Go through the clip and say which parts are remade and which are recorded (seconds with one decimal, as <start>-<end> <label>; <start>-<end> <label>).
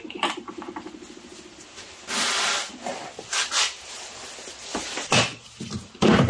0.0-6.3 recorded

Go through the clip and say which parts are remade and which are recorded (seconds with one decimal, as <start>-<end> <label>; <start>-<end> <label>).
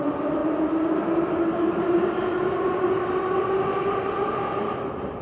0.0-5.2 recorded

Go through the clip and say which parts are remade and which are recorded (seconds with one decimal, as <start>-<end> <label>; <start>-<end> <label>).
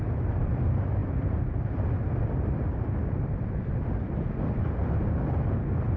0.0-6.0 recorded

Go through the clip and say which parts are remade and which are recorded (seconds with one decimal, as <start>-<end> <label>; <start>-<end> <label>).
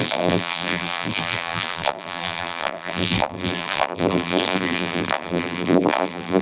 0.0-6.4 remade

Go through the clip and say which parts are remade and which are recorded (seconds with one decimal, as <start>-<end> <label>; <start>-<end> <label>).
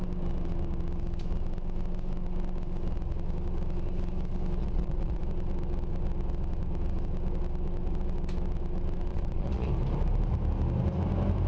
0.0-4.6 recorded; 4.6-5.2 remade; 5.2-9.1 recorded; 9.1-9.7 remade; 9.7-11.5 recorded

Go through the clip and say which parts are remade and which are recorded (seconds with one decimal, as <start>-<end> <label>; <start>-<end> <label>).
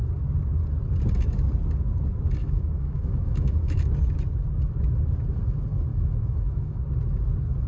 0.0-2.4 recorded; 2.4-3.9 remade; 3.9-5.9 recorded; 5.9-6.8 remade; 6.8-7.7 recorded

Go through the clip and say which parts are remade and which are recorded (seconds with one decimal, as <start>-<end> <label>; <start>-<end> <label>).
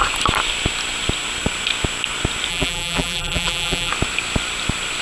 0.0-2.5 recorded; 2.5-3.9 remade; 3.9-5.0 recorded